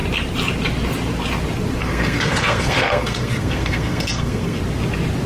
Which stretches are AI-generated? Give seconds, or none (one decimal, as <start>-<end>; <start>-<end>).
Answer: 1.8-4.6